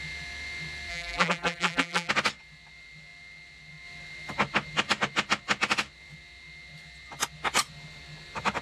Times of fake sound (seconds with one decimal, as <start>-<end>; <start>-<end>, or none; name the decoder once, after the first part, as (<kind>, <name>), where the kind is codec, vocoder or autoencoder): 0.9-2.1 (vocoder, BigVGAN v2)